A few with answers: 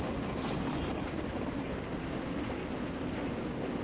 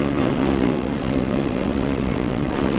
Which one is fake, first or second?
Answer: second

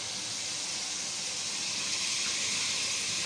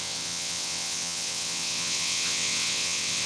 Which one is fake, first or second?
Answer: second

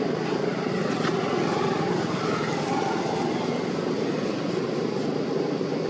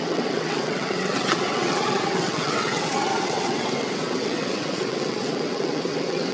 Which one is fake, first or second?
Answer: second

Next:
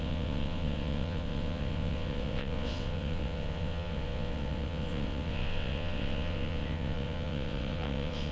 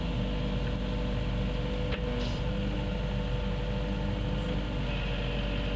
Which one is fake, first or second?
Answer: first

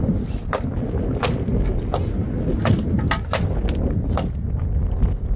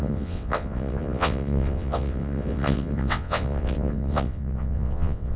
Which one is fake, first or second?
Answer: second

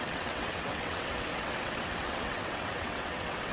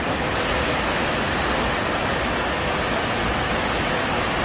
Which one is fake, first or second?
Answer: first